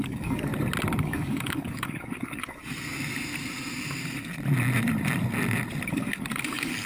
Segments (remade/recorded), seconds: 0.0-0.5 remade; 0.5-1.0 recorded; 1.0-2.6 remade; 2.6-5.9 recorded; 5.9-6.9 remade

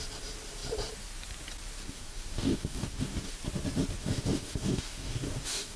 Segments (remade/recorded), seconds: 0.0-1.8 recorded; 1.8-3.3 remade; 3.3-4.0 recorded; 4.0-5.8 remade

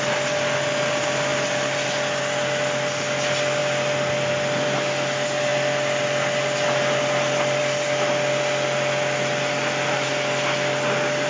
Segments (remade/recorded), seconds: 0.0-11.3 recorded

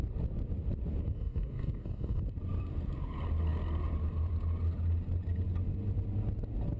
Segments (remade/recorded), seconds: 0.0-1.0 recorded; 1.0-2.2 remade; 2.2-6.8 recorded

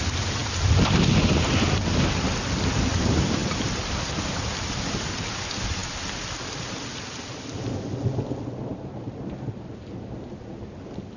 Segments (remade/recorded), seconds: 0.0-11.2 recorded

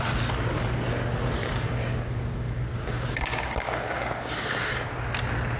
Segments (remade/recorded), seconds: 0.0-1.5 recorded; 1.5-4.9 remade; 4.9-5.6 recorded

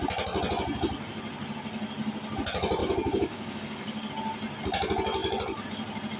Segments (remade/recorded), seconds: 0.0-2.8 recorded; 2.8-4.1 remade; 4.1-6.2 recorded

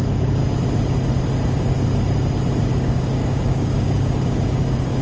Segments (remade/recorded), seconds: 0.0-0.4 remade; 0.4-2.7 recorded; 2.7-5.0 remade